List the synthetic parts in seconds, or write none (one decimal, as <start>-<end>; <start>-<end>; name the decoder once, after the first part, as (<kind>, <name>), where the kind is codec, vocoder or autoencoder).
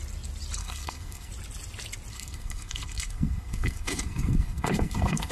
0.6-1.3 (codec, SNAC); 2.1-5.3